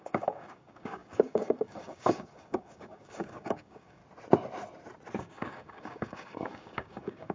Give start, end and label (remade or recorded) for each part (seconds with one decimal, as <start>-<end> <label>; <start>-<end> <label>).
0.0-4.0 remade; 4.0-5.2 recorded; 5.2-7.3 remade